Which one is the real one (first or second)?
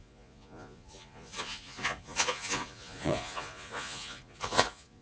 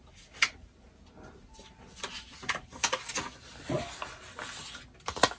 second